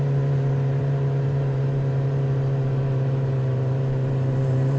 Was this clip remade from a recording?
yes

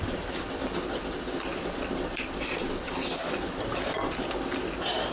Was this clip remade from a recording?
no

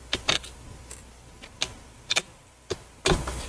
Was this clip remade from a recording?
no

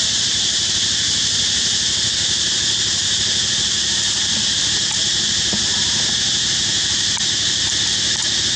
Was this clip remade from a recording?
no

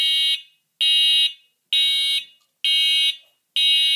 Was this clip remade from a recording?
no